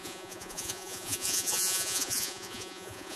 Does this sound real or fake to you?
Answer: fake